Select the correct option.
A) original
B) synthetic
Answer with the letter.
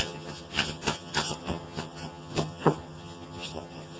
B